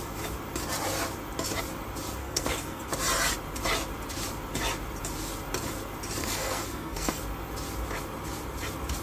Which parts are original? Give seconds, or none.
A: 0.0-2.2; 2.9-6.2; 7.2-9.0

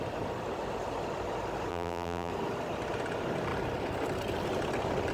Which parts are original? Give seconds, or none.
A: 0.0-1.7; 2.3-5.1

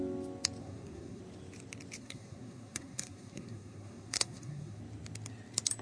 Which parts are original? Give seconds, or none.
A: 0.0-0.6; 1.2-2.0; 4.8-5.8

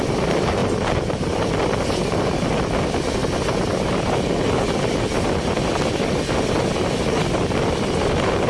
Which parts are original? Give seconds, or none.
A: 0.0-0.6; 1.5-8.5

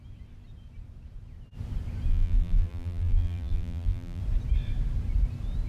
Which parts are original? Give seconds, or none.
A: 0.0-2.1; 4.2-5.7

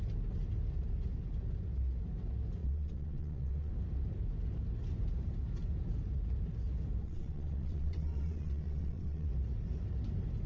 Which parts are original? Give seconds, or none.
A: 0.0-2.6; 3.7-7.0; 9.3-10.5

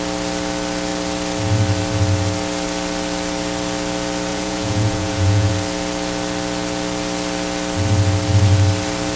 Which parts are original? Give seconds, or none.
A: 0.0-4.3; 5.5-9.2

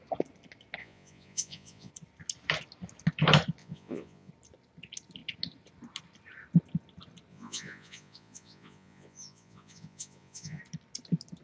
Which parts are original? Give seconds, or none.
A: 0.0-0.8; 1.9-3.6; 4.3-7.3; 10.6-11.4